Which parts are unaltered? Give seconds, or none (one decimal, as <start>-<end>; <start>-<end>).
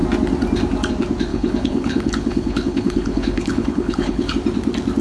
0.0-1.3; 4.3-5.0